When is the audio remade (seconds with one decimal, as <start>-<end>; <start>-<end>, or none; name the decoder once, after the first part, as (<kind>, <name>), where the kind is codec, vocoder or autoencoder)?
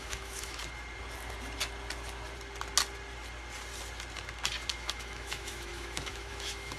0.0-0.6 (autoencoder, DAC-VAE); 4.7-6.8